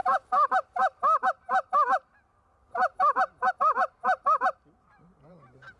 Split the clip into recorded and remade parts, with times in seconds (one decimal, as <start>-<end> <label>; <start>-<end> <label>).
0.0-3.5 recorded; 3.5-5.8 remade